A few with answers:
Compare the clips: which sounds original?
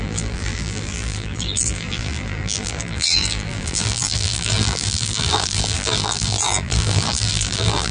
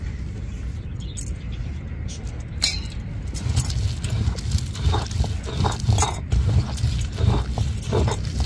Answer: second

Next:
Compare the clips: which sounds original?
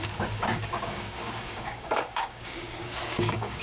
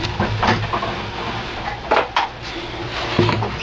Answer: second